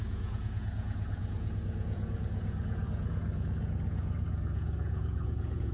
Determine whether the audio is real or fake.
fake